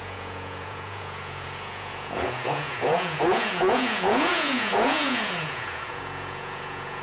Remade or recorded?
remade